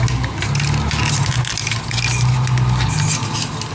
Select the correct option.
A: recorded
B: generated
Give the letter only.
A